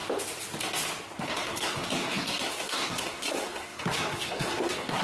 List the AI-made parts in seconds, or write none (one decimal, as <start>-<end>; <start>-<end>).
1.2-5.0